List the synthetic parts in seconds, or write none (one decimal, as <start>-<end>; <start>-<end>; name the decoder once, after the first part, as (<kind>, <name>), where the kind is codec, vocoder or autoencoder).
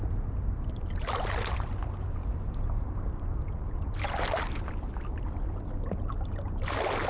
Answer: none